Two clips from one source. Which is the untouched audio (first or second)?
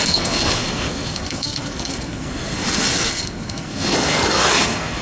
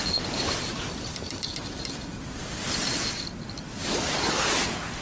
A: second